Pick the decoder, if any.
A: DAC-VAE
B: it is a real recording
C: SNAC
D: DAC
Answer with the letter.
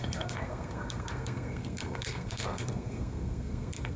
C